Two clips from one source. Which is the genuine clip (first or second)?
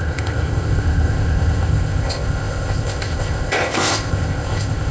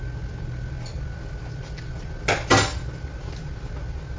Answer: second